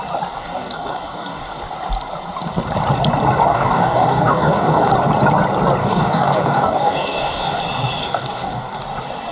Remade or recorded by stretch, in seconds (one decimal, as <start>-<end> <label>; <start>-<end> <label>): 0.0-0.4 recorded; 0.4-1.6 remade; 1.6-3.5 recorded; 3.5-4.9 remade; 4.9-5.8 recorded; 5.8-7.6 remade; 7.6-8.0 recorded; 8.0-8.8 remade; 8.8-9.3 recorded